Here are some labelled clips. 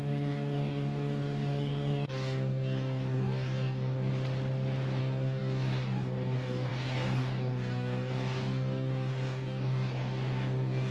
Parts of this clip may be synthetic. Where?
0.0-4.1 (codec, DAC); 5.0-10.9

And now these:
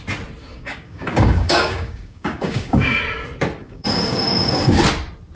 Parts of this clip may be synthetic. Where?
0.4-3.0 (codec, DAC); 3.6-4.8

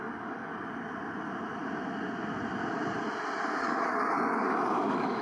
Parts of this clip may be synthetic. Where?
0.0-0.5 (codec, DAC); 3.6-5.2

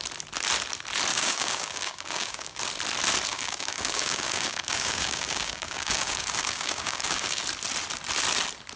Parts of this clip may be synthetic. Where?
1.1-2.6 (codec, DAC); 3.3-7.4

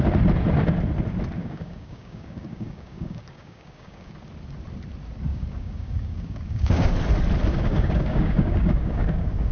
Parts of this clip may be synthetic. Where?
1.4-4.1 (codec, DAC); 5.3-6.9; 7.5-9.5